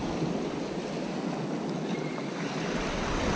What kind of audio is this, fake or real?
real